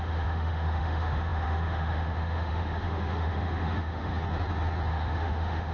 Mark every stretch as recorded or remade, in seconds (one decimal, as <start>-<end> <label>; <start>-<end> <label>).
0.0-4.1 remade; 4.1-4.9 recorded; 4.9-5.7 remade